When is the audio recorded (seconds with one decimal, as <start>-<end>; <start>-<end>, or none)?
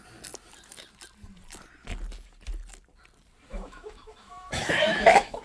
0.0-3.5